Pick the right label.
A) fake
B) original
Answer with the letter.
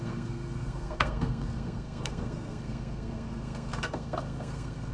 A